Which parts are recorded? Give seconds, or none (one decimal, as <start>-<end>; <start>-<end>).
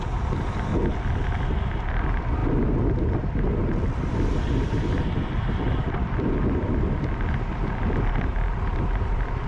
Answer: 0.7-1.9; 8.3-8.9